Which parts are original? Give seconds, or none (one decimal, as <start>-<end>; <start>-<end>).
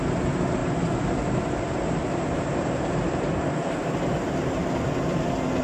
0.6-2.0; 4.6-5.6